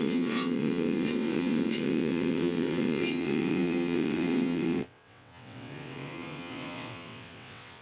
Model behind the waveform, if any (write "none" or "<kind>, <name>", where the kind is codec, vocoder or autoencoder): vocoder, WaveNeXt